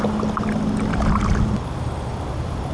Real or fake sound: real